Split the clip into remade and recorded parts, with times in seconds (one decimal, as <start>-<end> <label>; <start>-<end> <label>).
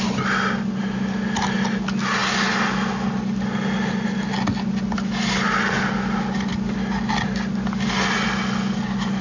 0.0-9.2 recorded